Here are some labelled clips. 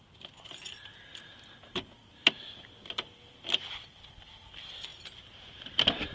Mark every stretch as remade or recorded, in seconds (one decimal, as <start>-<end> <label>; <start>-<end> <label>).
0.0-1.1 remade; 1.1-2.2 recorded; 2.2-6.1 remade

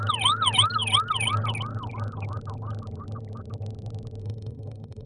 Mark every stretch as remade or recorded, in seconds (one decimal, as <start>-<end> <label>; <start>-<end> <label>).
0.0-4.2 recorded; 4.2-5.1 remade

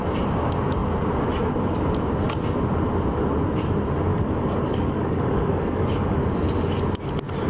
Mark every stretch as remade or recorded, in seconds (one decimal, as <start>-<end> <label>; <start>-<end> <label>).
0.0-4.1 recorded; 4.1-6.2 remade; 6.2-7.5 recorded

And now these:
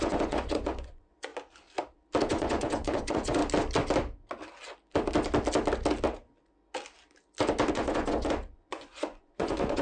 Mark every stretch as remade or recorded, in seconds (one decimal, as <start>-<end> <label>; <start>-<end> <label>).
0.0-1.3 remade; 1.3-2.3 recorded; 2.3-3.4 remade; 3.4-7.7 recorded; 7.7-9.8 remade

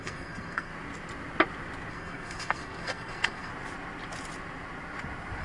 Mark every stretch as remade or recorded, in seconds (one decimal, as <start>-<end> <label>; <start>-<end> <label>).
0.0-0.7 remade; 0.7-1.9 recorded; 1.9-3.5 remade; 3.5-5.4 recorded

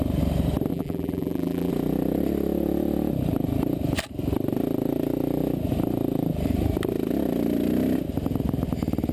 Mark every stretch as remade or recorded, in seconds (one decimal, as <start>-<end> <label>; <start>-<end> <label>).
0.0-0.7 recorded; 0.7-1.7 remade; 1.7-9.1 recorded

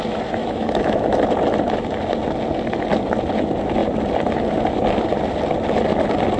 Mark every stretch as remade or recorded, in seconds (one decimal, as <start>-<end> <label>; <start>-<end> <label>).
0.0-0.4 recorded; 0.4-1.2 remade; 1.2-6.4 recorded

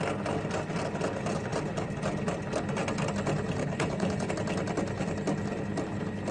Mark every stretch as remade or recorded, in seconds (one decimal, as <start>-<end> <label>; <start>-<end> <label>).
0.0-3.6 recorded; 3.6-4.3 remade; 4.3-6.3 recorded